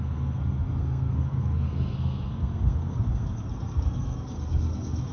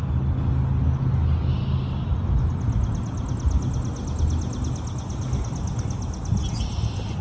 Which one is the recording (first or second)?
second